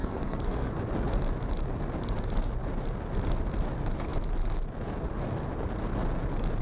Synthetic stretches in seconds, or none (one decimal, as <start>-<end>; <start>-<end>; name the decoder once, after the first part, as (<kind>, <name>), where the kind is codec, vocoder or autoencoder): 0.0-0.7 (codec, SNAC)